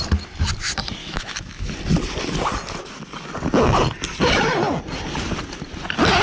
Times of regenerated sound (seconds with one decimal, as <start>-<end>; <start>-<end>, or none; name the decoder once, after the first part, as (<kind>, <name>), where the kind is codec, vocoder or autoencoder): 1.0-1.7 (autoencoder, DAC-VAE)